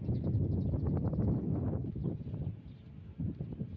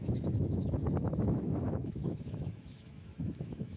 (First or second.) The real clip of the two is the first